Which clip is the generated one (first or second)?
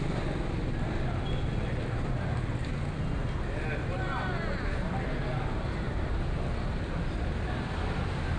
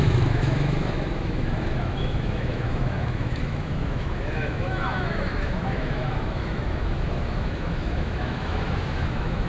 second